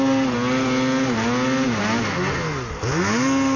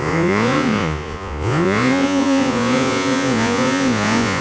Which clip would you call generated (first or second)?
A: second